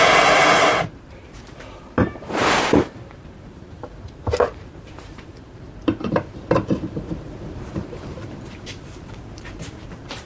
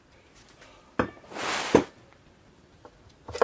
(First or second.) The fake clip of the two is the first